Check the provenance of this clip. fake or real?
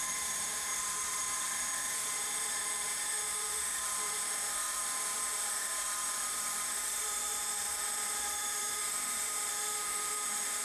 fake